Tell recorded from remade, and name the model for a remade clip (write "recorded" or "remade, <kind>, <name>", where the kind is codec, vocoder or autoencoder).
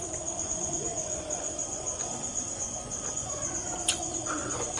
remade, vocoder, Vocos